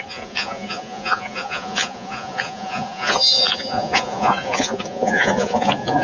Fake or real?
fake